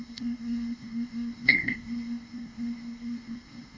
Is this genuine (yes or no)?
no